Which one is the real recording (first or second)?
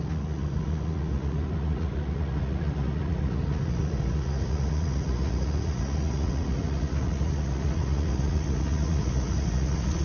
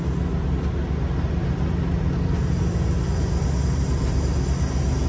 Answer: second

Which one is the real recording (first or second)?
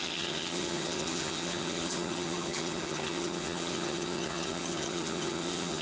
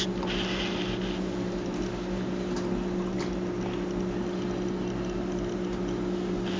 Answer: second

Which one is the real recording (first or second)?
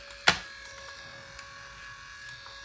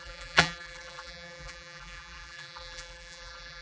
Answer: first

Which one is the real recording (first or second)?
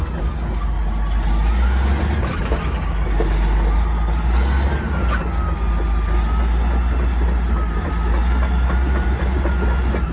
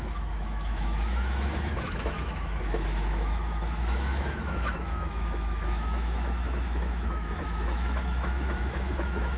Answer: first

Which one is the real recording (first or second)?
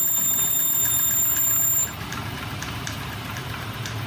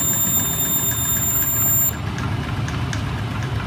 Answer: second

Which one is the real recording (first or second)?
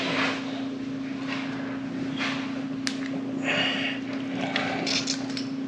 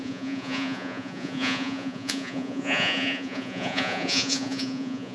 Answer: first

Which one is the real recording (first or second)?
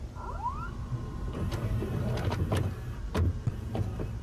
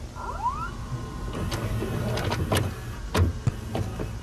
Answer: second